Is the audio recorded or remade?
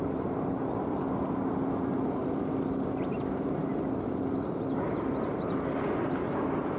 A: recorded